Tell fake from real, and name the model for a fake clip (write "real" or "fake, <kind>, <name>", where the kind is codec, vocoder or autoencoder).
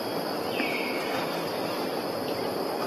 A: fake, vocoder, BigVGAN v2